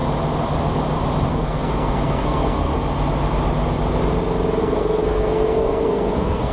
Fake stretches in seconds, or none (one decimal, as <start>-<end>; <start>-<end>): 1.3-2.7; 4.6-6.5